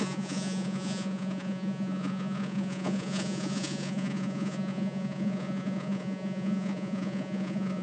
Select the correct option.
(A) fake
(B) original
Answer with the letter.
A